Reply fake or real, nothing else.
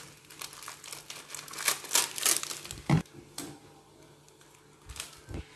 real